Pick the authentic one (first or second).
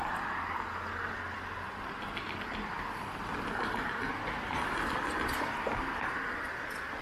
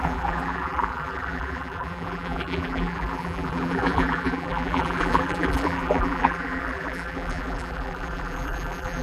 first